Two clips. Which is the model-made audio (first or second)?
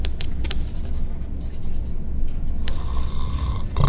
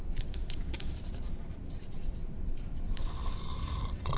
second